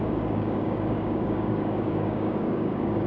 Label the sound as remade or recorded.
remade